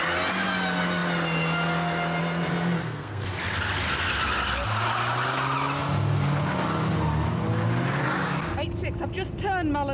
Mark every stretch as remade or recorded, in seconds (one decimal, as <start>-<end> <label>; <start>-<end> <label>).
0.0-2.8 recorded; 2.8-3.3 remade; 3.3-9.9 recorded

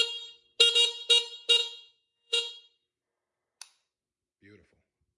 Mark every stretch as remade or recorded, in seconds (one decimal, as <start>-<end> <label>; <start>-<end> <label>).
0.0-1.6 recorded; 1.6-2.5 remade; 2.5-5.2 recorded